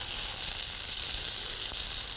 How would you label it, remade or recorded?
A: recorded